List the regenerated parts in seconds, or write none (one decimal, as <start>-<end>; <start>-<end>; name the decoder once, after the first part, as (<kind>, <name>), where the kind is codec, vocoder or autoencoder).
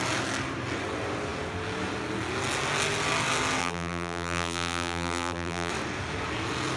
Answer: 3.6-5.7 (vocoder, BigVGAN v2)